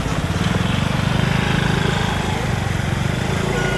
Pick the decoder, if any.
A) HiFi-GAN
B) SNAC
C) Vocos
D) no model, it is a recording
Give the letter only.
D